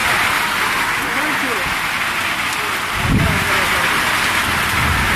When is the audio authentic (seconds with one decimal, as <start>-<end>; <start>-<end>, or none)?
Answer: 0.0-5.2